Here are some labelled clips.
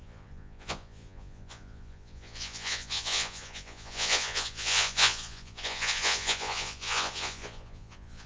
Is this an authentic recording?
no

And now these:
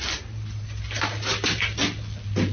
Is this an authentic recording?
yes